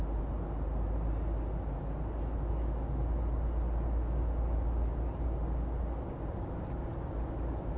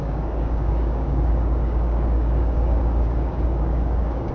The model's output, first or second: second